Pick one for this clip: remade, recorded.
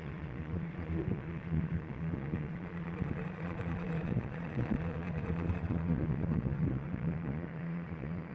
remade